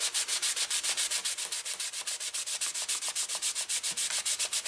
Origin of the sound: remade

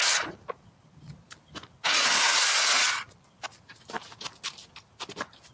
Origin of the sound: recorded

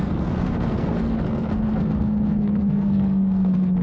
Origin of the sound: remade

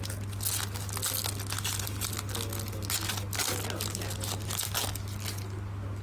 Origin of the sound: recorded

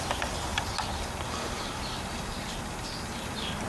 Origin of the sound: recorded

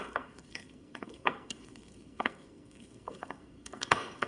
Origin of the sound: remade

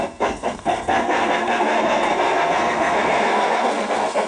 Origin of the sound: remade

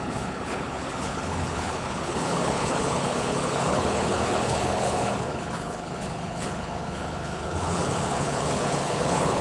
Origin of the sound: remade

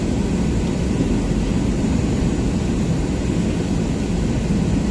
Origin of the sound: recorded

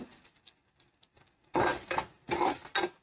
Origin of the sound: recorded